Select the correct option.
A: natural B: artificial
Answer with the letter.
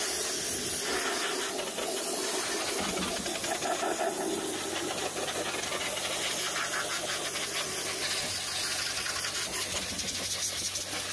A